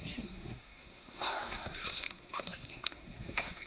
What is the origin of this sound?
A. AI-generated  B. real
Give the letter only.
A